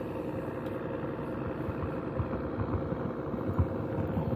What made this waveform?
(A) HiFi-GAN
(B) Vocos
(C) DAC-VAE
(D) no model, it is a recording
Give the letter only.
D